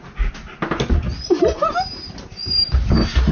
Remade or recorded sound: recorded